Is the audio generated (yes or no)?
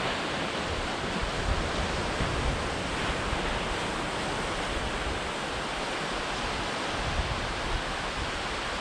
no